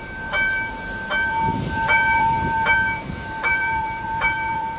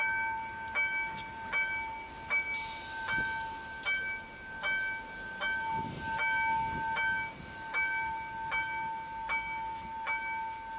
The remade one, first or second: first